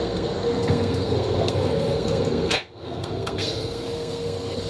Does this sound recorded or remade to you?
remade